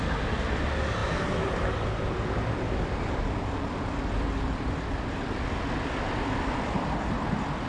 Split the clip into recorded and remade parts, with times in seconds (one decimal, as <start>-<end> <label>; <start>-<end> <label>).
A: 0.0-1.0 recorded; 1.0-5.4 remade; 5.4-7.7 recorded